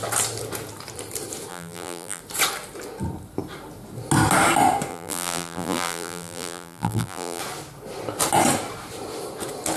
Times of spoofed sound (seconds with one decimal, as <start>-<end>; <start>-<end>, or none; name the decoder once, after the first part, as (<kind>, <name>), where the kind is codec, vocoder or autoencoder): 1.5-2.2 (vocoder, BigVGAN v2); 4.9-7.4